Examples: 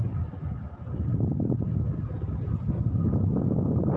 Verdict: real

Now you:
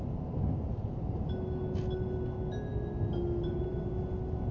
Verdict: real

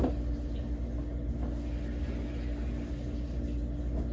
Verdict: real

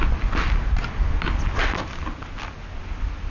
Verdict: real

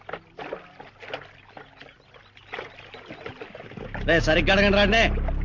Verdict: real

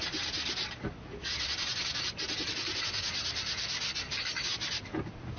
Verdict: real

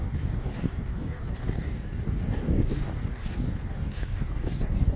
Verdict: fake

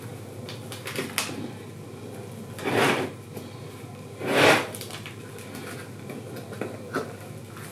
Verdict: real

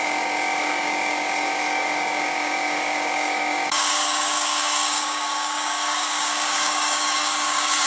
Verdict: fake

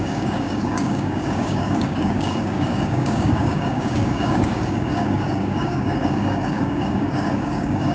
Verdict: fake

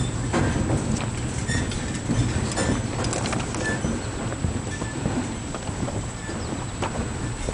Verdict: real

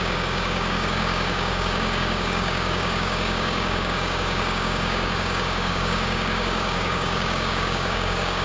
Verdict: fake